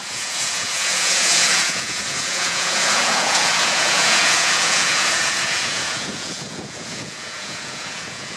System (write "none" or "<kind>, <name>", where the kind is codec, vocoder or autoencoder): vocoder, Vocos